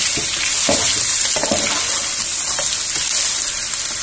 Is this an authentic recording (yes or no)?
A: yes